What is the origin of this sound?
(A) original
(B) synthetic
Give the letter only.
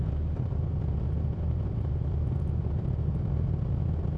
A